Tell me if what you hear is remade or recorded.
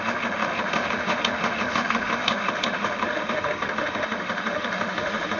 remade